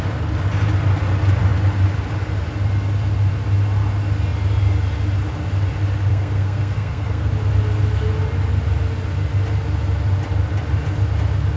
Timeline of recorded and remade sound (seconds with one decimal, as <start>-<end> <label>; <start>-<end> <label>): 0.0-6.1 recorded; 6.1-7.3 remade; 7.3-11.6 recorded